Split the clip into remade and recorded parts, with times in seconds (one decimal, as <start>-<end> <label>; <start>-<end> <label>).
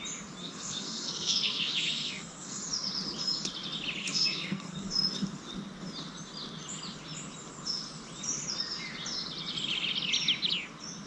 0.0-0.4 recorded; 0.4-2.6 remade; 2.6-4.0 recorded; 4.0-4.9 remade; 4.9-11.1 recorded